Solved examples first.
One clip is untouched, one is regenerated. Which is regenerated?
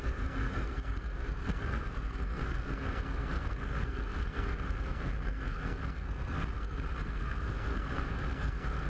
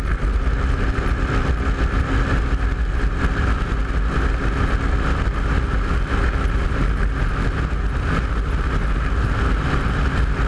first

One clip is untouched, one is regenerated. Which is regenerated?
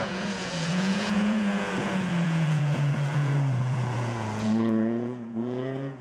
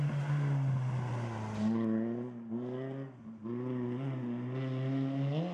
first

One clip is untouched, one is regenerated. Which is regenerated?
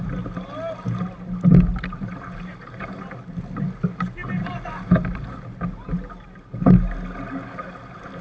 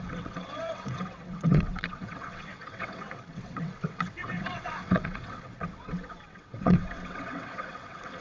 second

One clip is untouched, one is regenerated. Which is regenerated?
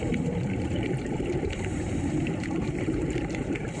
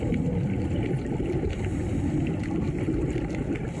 first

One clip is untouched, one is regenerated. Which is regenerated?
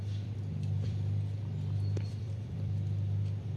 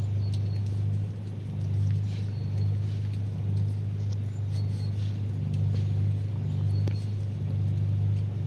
first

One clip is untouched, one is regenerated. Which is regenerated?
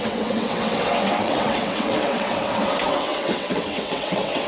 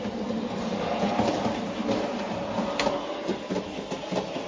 first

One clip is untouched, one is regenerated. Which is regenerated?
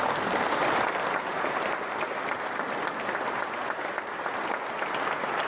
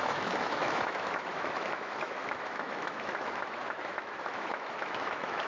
second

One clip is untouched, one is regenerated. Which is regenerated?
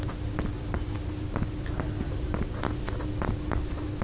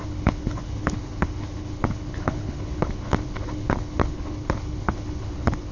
second